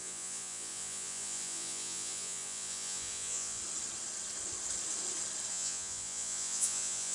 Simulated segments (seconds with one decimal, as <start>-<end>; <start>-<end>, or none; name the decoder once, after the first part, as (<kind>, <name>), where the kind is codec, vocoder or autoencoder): 0.0-3.6 (vocoder, Vocos); 5.5-7.1